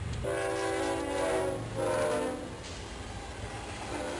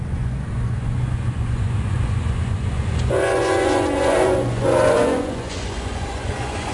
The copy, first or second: second